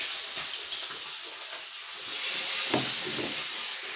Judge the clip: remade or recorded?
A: recorded